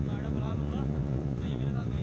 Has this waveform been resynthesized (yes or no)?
yes